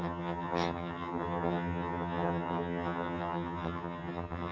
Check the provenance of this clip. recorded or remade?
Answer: remade